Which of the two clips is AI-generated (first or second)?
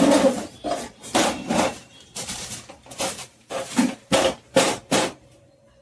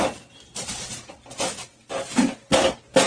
first